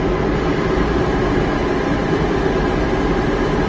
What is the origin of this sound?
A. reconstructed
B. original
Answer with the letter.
B